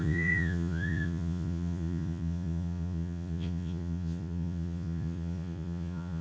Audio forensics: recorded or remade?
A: remade